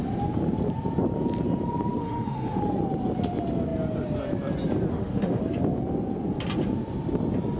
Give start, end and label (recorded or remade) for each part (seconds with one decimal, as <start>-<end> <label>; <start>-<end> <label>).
0.0-2.0 recorded; 2.0-2.6 remade; 2.6-4.9 recorded; 4.9-5.4 remade; 5.4-7.6 recorded